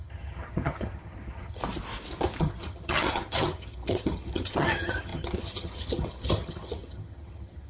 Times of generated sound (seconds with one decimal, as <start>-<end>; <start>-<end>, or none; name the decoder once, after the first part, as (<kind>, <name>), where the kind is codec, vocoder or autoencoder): 0.0-1.6 (vocoder, HiFi-GAN); 2.4-7.7